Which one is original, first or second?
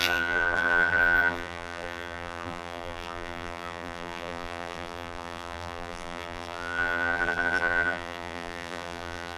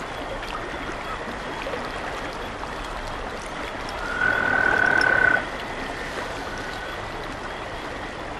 second